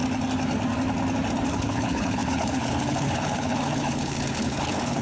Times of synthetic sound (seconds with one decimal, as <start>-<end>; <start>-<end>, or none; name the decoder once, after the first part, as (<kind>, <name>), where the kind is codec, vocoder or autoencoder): 1.5-5.0 (codec, HILCodec)

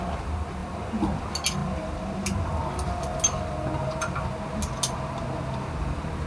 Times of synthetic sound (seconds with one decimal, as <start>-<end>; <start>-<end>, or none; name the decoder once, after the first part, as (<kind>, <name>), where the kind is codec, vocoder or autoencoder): none